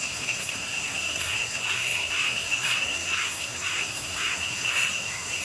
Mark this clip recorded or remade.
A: remade